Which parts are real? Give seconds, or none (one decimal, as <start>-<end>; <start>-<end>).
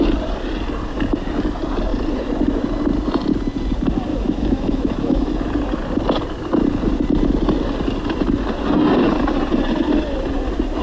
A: 0.0-4.1; 5.3-10.8